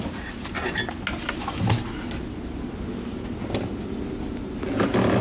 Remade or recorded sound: recorded